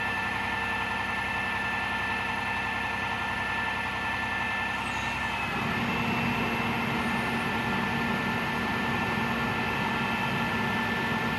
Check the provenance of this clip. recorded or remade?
recorded